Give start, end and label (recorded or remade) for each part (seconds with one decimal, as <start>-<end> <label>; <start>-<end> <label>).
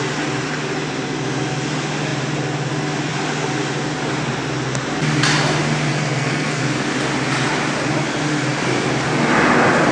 0.0-5.9 recorded; 5.9-6.6 remade; 6.6-9.9 recorded